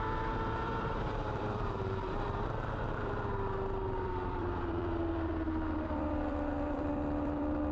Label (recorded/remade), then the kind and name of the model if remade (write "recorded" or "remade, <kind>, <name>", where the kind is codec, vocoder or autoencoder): remade, vocoder, BigVGAN v2